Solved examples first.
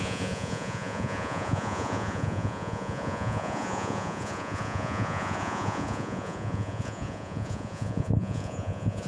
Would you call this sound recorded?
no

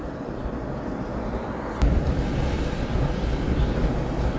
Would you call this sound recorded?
yes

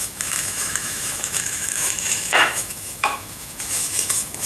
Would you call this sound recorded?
no